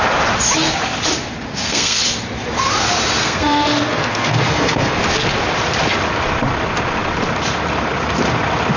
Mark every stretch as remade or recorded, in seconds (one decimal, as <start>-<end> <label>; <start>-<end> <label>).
0.0-1.5 recorded; 1.5-2.0 remade; 2.0-3.2 recorded; 3.2-5.0 remade; 5.0-8.8 recorded